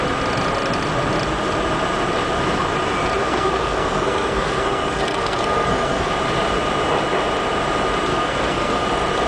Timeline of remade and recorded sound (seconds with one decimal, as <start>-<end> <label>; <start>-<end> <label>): 0.0-3.2 recorded; 3.2-6.1 remade; 6.1-8.1 recorded; 8.1-8.8 remade; 8.8-9.3 recorded